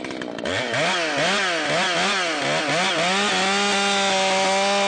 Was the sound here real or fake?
real